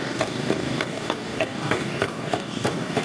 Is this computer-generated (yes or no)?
yes